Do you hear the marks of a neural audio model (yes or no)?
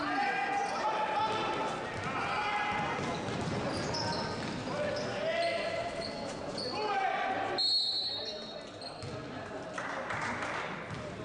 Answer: no